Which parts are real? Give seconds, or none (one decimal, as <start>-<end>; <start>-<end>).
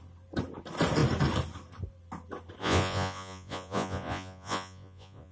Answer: 0.0-2.6